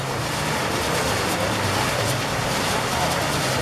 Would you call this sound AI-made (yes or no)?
no